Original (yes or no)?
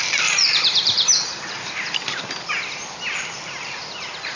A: no